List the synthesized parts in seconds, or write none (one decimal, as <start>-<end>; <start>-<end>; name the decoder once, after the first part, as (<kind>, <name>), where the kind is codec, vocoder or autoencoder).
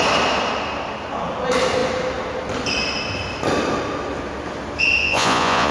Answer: 5.0-5.7 (vocoder, Vocos)